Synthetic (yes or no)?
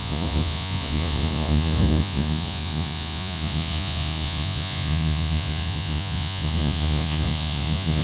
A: yes